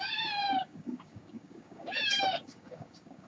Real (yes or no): no